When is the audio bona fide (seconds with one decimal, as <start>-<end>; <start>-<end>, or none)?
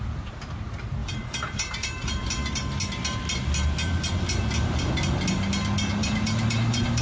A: 0.0-1.0; 2.3-6.0